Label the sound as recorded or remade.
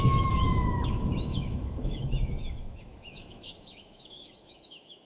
remade